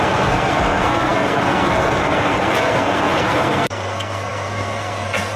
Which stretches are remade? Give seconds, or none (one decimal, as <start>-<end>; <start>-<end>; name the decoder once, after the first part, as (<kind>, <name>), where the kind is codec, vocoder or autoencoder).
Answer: 0.0-5.4 (codec, SNAC)

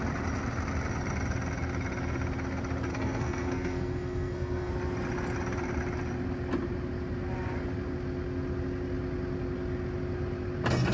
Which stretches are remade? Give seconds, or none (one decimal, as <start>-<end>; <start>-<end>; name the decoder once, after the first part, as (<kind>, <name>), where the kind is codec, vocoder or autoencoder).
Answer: 2.9-4.7 (codec, SNAC)

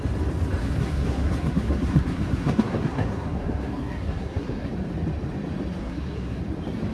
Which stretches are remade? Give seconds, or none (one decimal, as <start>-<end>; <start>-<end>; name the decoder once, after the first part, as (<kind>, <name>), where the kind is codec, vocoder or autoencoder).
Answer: 0.6-4.7 (codec, SNAC); 5.8-6.4

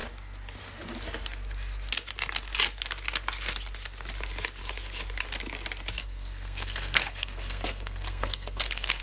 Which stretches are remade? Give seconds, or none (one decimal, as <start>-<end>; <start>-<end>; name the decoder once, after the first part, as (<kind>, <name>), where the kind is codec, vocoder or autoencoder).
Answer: 6.0-9.0 (codec, SNAC)

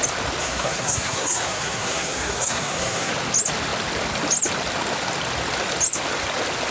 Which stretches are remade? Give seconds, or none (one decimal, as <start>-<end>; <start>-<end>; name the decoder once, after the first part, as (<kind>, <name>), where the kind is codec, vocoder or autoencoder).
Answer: 0.4-3.1 (codec, SNAC)

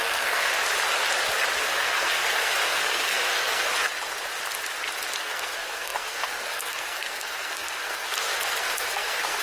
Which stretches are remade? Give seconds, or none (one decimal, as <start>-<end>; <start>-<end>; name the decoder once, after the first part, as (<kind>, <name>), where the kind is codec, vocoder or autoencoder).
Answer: 0.0-0.5 (codec, SNAC); 1.6-3.7; 5.2-9.4